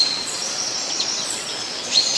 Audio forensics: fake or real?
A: fake